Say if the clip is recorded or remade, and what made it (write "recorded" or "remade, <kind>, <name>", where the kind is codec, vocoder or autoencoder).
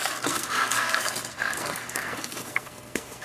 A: remade, codec, SNAC